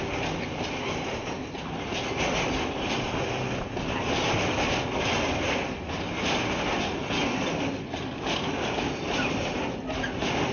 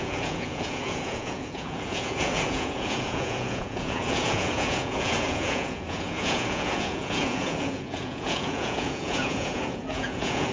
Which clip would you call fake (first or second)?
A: second